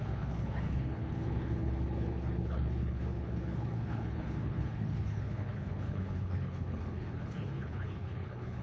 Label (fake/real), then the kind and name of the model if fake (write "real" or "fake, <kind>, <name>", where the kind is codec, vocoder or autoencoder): fake, codec, HILCodec